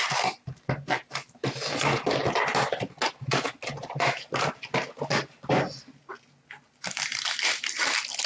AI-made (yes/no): no